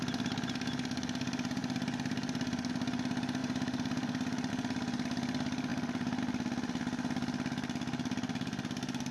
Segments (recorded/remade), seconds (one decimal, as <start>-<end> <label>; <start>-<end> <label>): 0.0-3.4 recorded; 3.4-4.5 remade; 4.5-5.7 recorded; 5.7-6.2 remade; 6.2-9.1 recorded